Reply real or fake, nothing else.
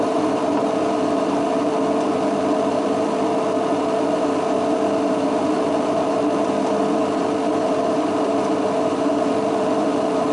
fake